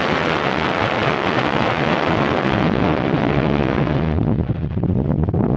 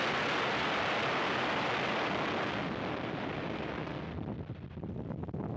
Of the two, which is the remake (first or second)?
first